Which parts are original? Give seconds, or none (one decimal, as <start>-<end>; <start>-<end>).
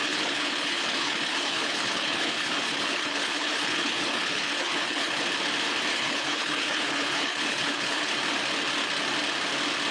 5.2-5.9; 8.1-9.9